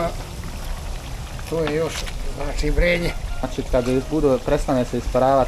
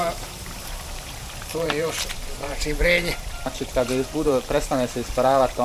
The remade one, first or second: second